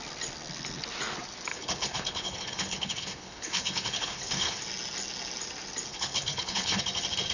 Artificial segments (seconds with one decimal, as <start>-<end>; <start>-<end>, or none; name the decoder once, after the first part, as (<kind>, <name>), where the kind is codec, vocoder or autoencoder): 1.5-4.6 (codec, HILCodec); 5.9-6.8